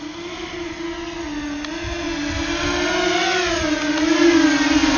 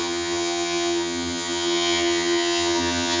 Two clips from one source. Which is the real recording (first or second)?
first